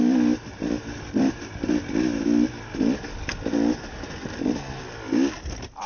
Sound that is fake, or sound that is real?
real